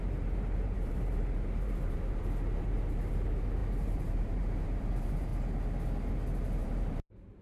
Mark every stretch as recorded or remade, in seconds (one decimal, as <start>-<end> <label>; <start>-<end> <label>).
0.0-5.3 remade; 5.3-6.6 recorded; 6.6-7.4 remade